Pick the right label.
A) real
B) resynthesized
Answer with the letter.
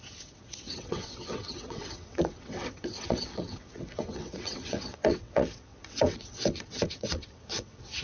B